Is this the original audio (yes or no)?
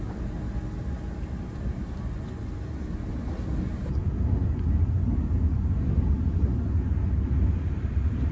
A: yes